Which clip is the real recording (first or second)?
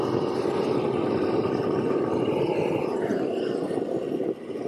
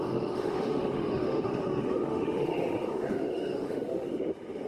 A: first